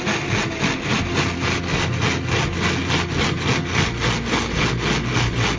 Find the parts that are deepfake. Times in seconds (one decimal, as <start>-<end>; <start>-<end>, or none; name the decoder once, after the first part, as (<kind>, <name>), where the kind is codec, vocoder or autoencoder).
none